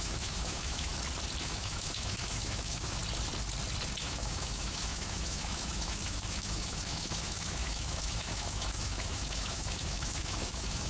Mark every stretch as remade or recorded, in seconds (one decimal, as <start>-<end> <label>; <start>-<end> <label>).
0.0-0.9 remade; 0.9-1.4 recorded; 1.4-3.0 remade; 3.0-4.0 recorded; 4.0-10.9 remade